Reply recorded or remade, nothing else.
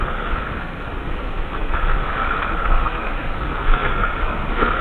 remade